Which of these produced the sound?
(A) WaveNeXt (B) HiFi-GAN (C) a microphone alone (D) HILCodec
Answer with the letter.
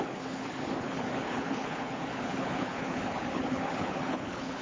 D